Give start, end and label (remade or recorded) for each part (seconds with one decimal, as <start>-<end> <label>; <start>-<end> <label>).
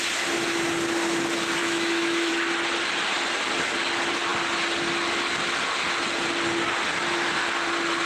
0.0-1.6 recorded; 1.6-2.3 remade; 2.3-8.1 recorded